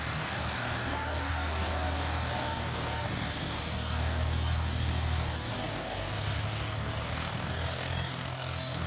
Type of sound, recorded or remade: remade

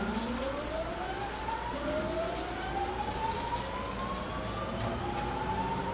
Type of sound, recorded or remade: recorded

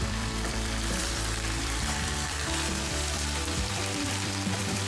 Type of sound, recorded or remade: remade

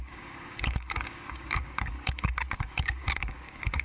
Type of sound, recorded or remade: remade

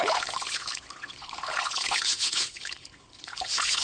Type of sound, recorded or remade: remade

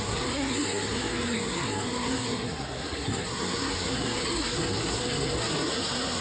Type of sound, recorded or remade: remade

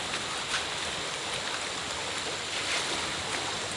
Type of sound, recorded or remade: recorded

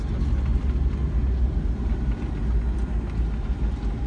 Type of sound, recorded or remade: recorded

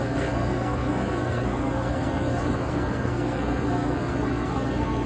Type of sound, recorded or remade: remade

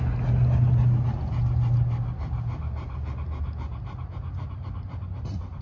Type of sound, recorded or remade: recorded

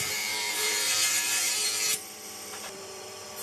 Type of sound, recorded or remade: remade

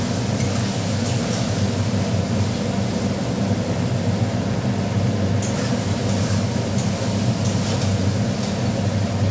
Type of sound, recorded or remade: recorded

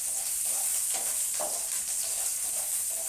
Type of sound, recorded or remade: recorded